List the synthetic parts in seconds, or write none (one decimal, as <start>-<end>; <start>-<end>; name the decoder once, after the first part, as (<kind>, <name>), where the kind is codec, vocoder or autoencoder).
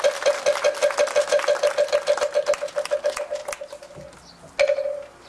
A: none